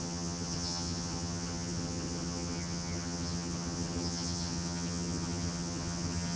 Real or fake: fake